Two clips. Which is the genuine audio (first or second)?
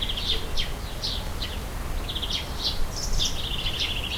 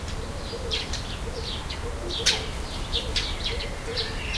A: first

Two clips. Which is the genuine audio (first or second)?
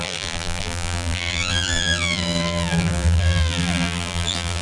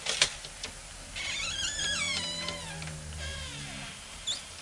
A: second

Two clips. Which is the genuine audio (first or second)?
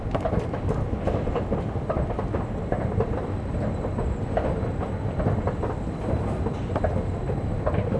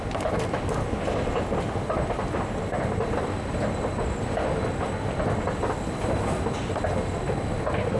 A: second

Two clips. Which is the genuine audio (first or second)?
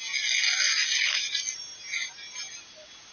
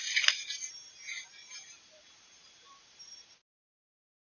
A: first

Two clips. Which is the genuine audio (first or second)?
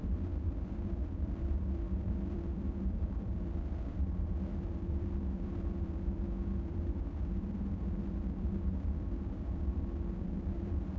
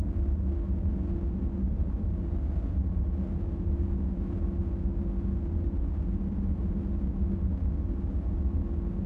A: second